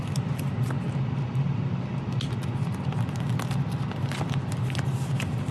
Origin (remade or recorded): recorded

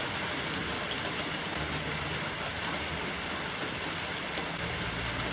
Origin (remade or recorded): recorded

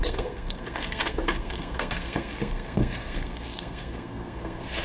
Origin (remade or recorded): remade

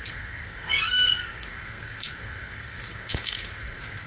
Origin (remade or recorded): remade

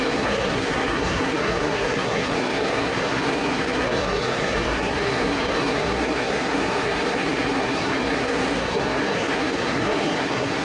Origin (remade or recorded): remade